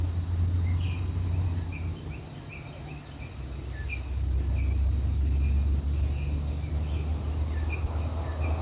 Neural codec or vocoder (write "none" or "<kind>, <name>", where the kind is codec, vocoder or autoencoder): none